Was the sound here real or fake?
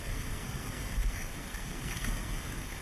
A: fake